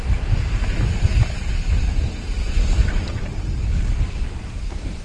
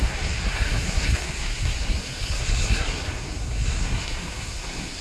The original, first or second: first